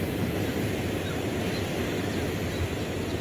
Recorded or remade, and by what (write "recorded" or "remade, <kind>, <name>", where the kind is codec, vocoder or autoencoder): recorded